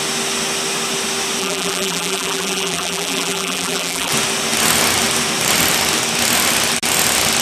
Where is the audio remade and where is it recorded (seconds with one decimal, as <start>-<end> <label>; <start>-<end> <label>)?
0.0-1.4 recorded; 1.4-4.1 remade; 4.1-7.4 recorded